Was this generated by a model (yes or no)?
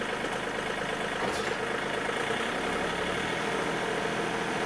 no